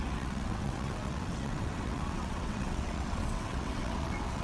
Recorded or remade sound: remade